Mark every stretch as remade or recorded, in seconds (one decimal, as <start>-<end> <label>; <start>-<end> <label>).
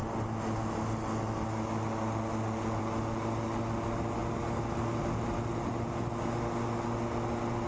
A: 0.0-7.7 recorded